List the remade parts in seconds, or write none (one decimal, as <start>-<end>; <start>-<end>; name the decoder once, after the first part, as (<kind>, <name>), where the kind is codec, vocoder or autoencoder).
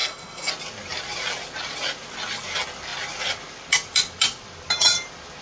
0.0-0.5 (codec, SNAC)